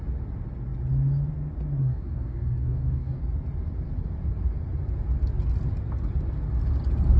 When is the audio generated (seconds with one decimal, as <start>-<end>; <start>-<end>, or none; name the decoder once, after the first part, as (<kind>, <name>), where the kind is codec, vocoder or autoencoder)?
1.8-3.2 (codec, DAC)